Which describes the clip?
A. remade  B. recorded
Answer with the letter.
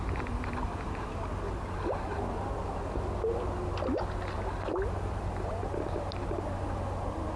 B